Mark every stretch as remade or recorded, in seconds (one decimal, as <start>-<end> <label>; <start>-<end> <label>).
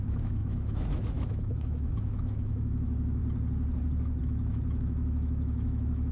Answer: 0.0-3.2 remade; 3.2-4.2 recorded; 4.2-6.1 remade